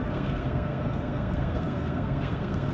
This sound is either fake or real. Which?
fake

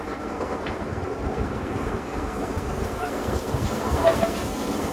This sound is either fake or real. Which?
fake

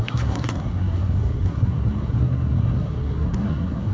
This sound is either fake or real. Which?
fake